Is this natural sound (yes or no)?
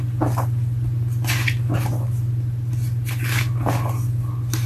yes